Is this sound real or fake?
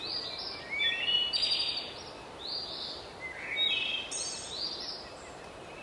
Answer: real